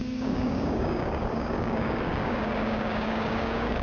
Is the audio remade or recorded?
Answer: remade